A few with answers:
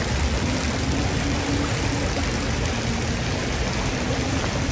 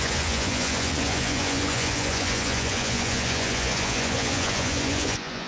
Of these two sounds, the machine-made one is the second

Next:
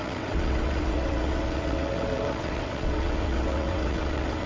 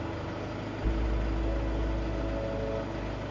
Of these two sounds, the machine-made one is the first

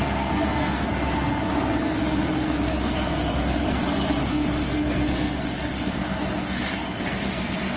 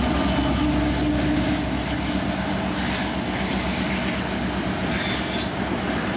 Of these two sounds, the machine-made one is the first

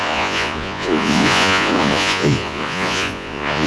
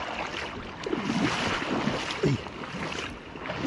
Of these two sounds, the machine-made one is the first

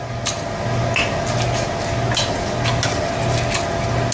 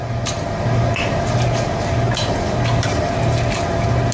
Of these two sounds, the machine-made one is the second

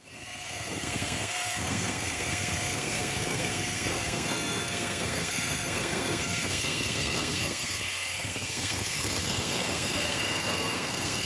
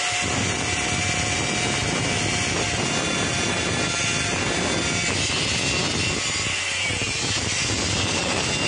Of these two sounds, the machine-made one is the first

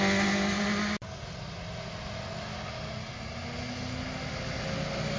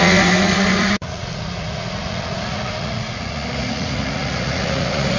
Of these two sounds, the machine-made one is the second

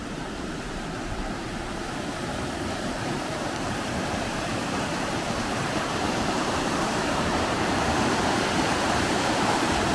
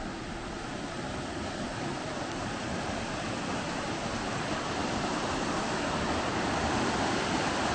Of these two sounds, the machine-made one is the first